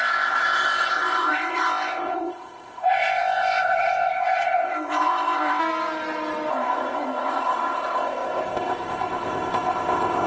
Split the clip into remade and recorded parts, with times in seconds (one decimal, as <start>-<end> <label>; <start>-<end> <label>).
0.0-5.6 remade; 5.6-6.5 recorded; 6.5-10.3 remade